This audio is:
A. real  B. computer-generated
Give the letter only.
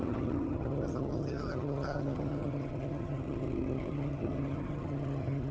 B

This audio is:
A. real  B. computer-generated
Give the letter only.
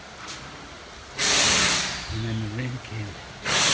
A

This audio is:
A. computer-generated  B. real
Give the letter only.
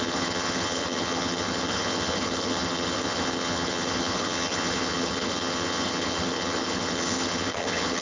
A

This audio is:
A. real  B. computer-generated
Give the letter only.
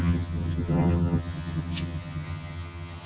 B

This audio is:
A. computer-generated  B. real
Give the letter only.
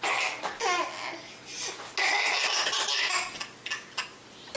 B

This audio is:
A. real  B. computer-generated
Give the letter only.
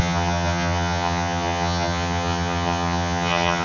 B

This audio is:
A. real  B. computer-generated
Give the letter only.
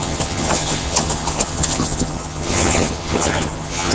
B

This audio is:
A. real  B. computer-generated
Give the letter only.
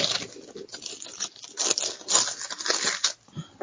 A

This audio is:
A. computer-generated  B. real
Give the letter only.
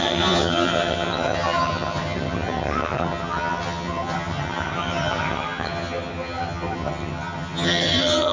A